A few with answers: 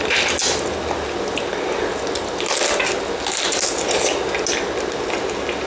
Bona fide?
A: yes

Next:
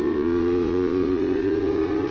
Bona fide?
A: no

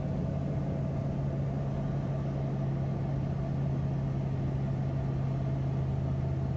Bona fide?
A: yes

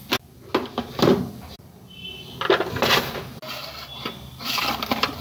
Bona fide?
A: yes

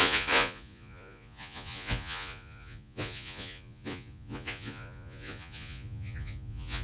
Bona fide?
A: no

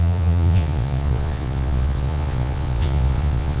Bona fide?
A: no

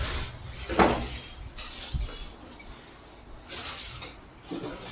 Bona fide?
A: yes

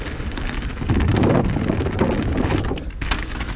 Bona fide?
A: yes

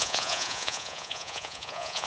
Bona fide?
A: no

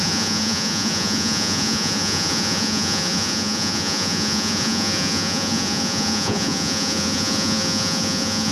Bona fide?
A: no